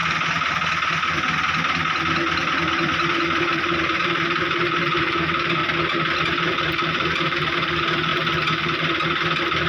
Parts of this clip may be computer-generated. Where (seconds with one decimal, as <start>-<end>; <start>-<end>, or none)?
3.4-5.6; 6.3-8.1

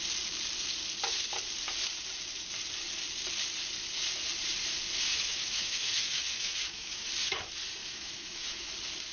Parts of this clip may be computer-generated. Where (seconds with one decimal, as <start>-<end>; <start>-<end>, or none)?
5.1-7.1; 7.8-8.7

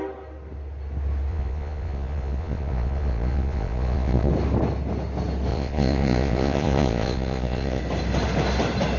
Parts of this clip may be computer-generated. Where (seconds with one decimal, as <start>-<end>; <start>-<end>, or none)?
1.3-4.3; 5.5-7.8

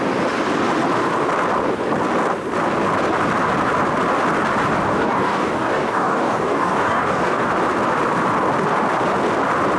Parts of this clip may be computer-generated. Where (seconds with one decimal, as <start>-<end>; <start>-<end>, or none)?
4.9-7.5

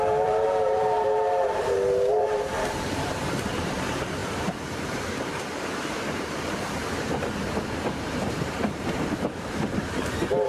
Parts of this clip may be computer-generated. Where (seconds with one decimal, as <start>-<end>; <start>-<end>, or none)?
0.0-10.5

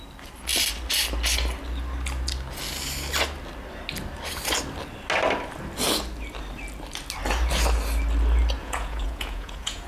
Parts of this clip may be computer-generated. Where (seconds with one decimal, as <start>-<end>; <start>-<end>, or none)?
8.6-9.9